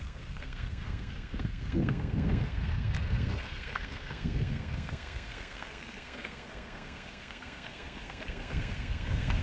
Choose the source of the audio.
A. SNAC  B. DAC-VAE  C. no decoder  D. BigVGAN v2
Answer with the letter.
A